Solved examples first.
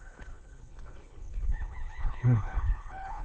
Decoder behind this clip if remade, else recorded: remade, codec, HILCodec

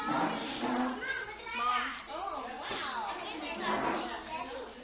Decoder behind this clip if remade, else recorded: recorded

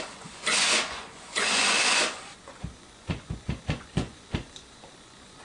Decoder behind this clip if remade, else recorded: remade, vocoder, Vocos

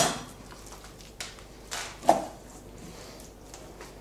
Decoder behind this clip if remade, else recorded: recorded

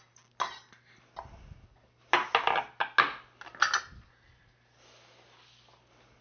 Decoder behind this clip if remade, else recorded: recorded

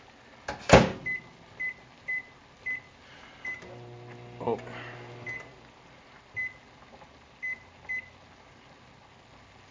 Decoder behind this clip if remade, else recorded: recorded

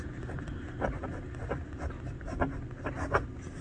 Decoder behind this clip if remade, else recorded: recorded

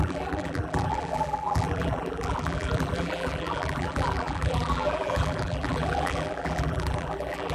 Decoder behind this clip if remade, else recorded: remade, vocoder, BigVGAN v2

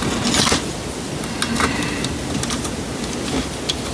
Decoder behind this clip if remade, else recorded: recorded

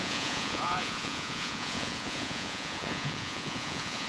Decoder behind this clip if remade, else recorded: remade, vocoder, Vocos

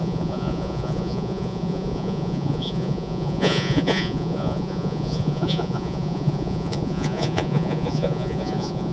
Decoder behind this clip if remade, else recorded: remade, vocoder, Vocos